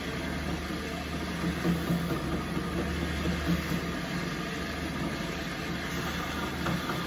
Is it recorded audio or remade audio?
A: recorded